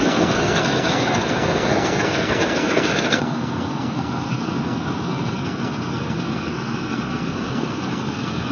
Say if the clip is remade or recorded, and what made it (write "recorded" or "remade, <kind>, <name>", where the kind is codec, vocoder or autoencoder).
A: remade, codec, SNAC